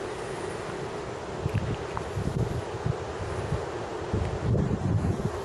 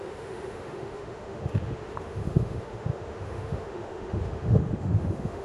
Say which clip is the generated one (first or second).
second